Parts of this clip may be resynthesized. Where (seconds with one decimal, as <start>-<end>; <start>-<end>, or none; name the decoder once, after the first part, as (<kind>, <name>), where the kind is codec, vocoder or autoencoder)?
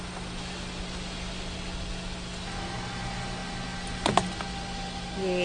none